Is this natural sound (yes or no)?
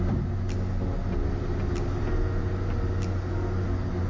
yes